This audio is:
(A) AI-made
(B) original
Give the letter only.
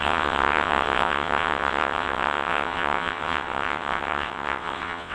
A